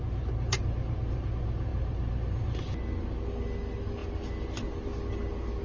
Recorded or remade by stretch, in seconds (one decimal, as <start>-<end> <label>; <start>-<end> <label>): 0.0-5.6 recorded